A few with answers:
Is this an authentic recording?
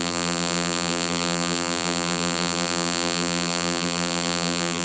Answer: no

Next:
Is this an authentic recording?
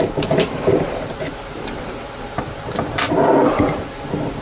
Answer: no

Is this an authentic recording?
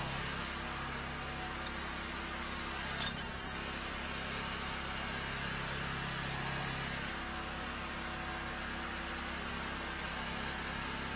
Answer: yes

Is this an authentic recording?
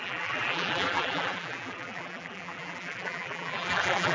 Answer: no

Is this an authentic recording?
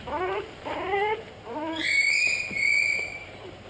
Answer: no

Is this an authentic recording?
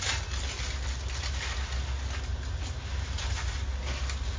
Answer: yes